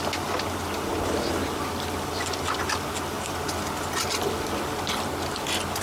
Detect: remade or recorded recorded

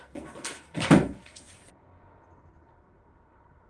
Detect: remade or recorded remade